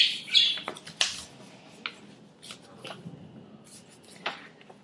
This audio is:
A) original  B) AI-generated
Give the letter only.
A